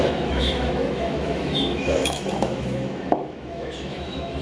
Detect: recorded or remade remade